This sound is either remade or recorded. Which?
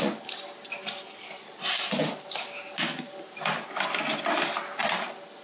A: recorded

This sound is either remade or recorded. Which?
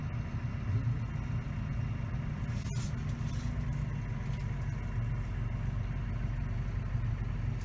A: recorded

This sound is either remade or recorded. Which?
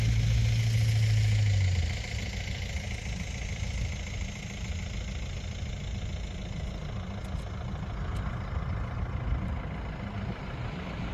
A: recorded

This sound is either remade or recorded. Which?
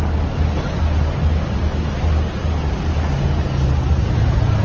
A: recorded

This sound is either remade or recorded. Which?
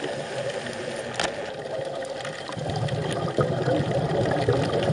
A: recorded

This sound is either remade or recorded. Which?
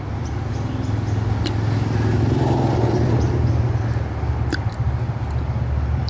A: recorded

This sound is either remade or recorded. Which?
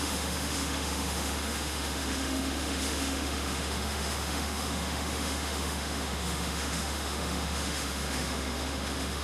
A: remade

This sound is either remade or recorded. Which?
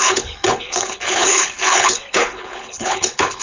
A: remade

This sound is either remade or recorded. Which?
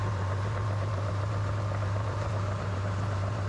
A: remade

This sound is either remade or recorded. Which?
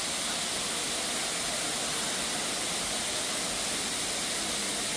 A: recorded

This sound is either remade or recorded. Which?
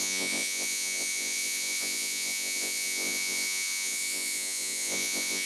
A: remade